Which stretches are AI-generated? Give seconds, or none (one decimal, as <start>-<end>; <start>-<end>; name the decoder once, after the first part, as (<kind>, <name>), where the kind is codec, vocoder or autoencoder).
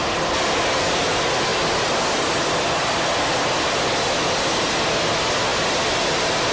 none